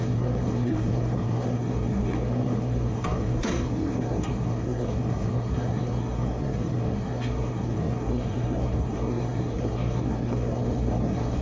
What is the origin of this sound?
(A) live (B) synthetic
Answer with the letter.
B